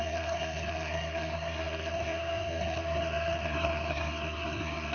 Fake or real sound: fake